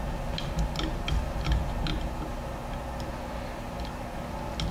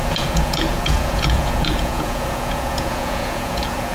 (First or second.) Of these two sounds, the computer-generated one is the second